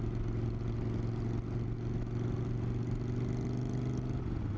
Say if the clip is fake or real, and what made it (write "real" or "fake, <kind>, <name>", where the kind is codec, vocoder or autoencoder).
real